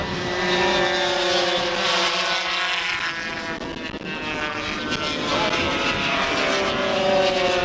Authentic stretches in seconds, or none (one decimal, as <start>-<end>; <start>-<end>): 0.0-7.6